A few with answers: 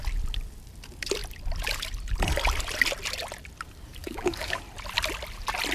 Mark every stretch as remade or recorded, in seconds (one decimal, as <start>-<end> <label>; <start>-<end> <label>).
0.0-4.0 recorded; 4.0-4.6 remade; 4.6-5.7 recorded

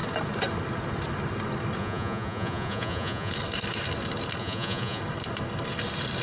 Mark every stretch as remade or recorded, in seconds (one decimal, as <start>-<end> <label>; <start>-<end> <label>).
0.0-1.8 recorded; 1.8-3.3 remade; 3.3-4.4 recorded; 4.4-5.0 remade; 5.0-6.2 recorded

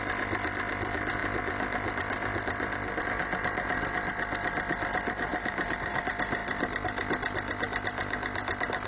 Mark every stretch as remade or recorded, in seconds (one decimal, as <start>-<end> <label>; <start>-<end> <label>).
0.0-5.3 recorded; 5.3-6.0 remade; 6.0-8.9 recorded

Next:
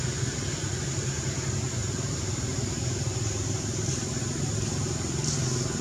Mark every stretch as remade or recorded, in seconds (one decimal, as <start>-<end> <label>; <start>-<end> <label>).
0.0-1.8 recorded; 1.8-4.4 remade; 4.4-5.8 recorded